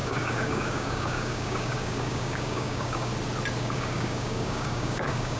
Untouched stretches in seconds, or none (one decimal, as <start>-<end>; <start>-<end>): 3.1-3.6